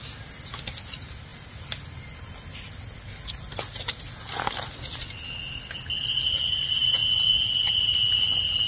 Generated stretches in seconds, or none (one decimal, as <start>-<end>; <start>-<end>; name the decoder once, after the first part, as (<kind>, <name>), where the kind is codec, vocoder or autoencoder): none